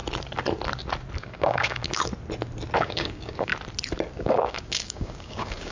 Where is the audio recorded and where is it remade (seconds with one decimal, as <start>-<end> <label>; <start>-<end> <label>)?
0.0-1.2 recorded; 1.2-2.1 remade; 2.1-2.8 recorded; 2.8-3.5 remade; 3.5-4.2 recorded; 4.2-5.7 remade